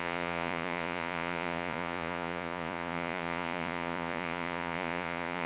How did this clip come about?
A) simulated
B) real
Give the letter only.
A